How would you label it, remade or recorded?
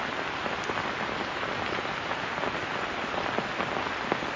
recorded